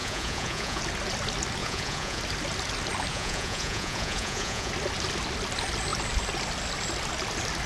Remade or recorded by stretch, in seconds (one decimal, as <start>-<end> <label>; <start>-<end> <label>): 0.0-0.8 remade; 0.8-1.6 recorded; 1.6-2.2 remade; 2.2-3.1 recorded; 3.1-4.7 remade; 4.7-7.7 recorded